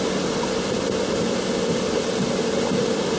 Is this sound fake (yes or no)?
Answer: no